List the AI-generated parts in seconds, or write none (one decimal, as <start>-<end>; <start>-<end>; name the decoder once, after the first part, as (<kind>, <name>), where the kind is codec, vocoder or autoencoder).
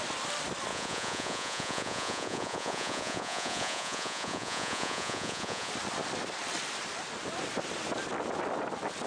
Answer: 0.7-5.7 (vocoder, Vocos)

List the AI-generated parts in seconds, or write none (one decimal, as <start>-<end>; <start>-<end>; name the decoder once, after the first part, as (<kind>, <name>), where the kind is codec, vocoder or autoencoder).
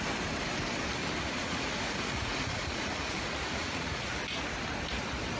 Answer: 1.0-4.2 (vocoder, Vocos)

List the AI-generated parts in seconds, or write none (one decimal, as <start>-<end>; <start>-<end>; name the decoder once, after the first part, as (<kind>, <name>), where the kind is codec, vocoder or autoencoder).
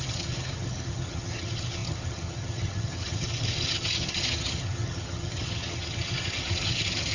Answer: 0.0-7.1 (vocoder, HiFi-GAN)